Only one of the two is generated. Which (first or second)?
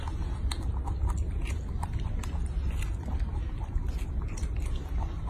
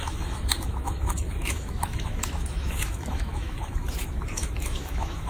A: second